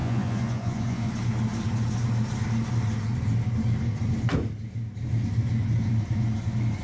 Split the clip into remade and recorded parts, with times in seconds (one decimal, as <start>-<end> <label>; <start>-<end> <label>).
0.0-1.1 remade; 1.1-6.8 recorded